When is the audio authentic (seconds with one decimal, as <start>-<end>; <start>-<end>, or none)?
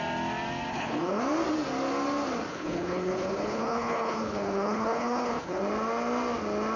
0.0-0.7; 1.2-2.5; 5.6-6.8